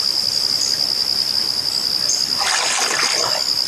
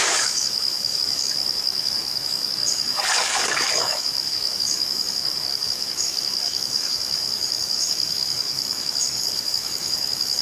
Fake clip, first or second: second